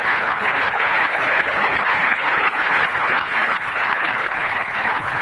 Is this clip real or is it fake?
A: fake